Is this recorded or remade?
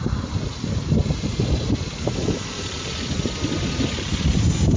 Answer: recorded